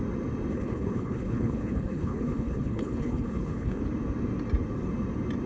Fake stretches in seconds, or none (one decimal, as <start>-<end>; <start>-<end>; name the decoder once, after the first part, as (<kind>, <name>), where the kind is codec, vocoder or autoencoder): 0.5-3.8 (codec, HILCodec)